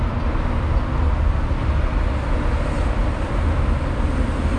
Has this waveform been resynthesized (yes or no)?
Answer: no